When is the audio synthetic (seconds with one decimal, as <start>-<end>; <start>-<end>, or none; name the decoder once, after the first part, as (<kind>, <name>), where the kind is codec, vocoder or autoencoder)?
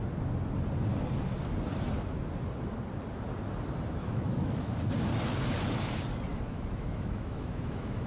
4.0-4.7 (autoencoder, DAC-VAE); 6.3-8.1